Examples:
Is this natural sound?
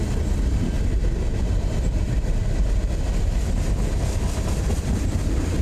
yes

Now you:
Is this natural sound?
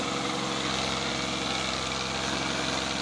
yes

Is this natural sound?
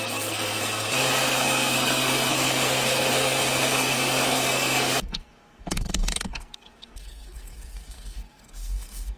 no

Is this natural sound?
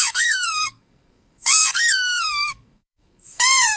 no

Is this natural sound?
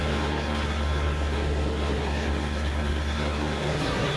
no